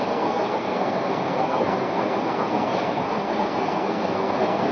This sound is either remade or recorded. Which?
remade